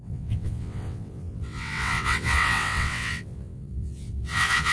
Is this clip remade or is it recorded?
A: remade